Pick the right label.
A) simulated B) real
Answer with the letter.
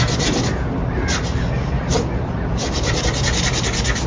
B